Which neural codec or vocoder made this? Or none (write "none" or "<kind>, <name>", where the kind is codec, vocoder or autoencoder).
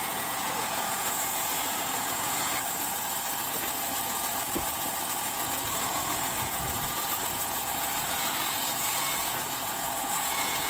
vocoder, Vocos